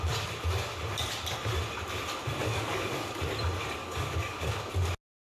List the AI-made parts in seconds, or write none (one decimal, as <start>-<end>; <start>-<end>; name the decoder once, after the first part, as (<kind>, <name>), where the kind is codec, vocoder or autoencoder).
2.4-3.2 (codec, DAC); 3.8-4.7